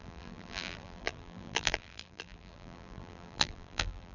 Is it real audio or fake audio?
fake